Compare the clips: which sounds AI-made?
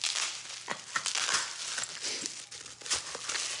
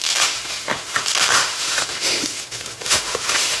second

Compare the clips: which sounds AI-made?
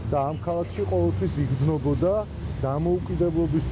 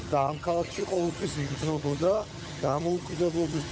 second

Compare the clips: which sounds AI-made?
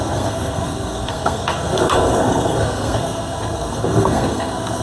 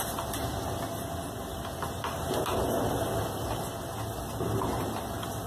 first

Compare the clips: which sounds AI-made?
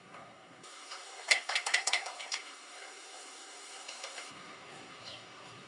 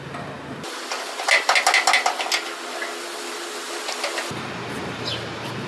first